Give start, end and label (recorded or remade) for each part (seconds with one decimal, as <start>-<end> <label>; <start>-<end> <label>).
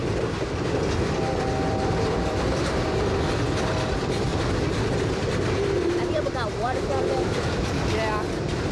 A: 0.0-8.7 remade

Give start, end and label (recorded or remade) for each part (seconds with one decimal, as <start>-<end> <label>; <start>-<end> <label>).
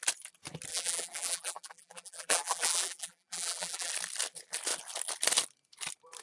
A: 0.0-0.7 recorded; 0.7-3.9 remade; 3.9-6.2 recorded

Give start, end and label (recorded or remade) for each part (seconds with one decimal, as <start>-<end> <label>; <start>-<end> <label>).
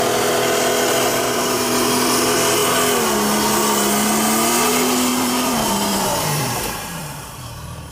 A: 0.0-1.1 recorded; 1.1-1.7 remade; 1.7-5.1 recorded; 5.1-7.9 remade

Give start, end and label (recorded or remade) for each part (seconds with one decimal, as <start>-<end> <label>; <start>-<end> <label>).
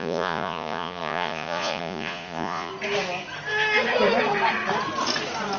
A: 0.0-2.7 remade; 2.7-5.6 recorded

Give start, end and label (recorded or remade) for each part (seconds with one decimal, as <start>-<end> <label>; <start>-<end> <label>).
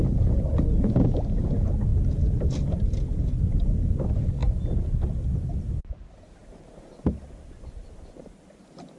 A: 0.0-9.0 recorded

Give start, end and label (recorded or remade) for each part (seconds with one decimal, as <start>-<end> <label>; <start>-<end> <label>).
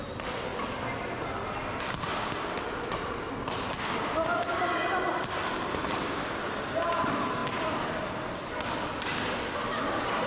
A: 0.0-10.3 recorded